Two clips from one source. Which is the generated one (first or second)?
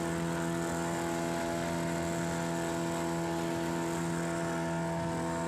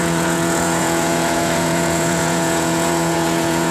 second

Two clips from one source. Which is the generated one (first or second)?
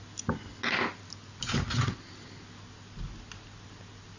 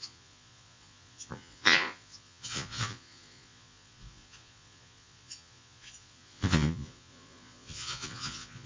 second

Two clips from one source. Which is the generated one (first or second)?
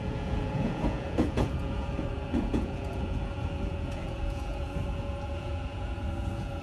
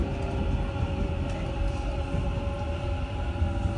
first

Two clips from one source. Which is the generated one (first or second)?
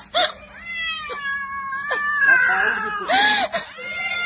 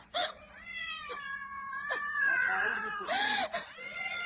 second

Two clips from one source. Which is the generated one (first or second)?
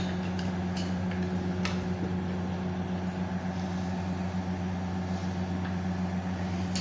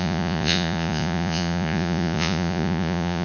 second